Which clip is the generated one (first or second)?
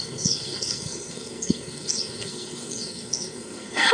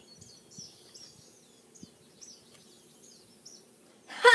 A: first